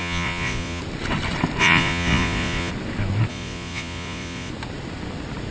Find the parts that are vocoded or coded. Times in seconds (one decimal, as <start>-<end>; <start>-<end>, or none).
0.0-0.8; 1.6-2.7; 3.3-4.5